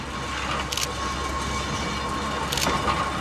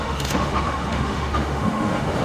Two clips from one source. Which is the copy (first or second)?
second